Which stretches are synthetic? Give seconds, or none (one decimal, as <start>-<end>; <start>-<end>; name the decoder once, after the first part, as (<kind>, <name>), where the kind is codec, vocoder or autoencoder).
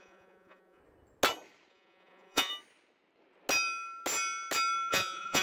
0.0-0.8 (vocoder, Vocos); 1.7-2.5; 4.9-5.4